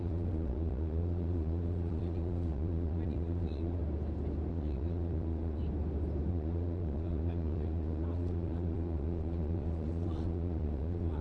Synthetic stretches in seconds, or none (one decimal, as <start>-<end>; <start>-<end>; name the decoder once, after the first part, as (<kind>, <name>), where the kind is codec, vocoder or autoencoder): 0.0-3.8 (vocoder, Vocos); 4.5-5.6; 6.3-11.2